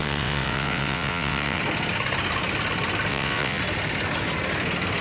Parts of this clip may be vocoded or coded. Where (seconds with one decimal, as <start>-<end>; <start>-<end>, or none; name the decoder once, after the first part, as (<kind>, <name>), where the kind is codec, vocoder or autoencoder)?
0.0-1.6 (vocoder, WaveNeXt); 3.1-3.6